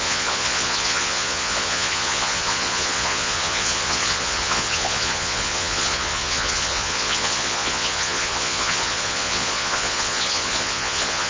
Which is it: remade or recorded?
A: remade